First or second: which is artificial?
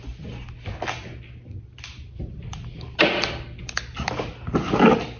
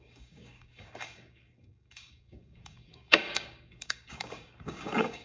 second